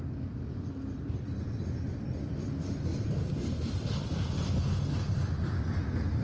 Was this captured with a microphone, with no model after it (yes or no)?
yes